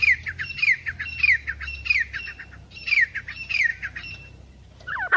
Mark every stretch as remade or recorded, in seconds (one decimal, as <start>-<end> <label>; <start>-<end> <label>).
0.0-3.7 recorded; 3.7-5.2 remade

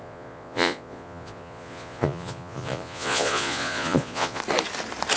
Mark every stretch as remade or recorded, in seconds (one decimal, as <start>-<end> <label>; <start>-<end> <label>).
0.0-4.4 remade; 4.4-5.2 recorded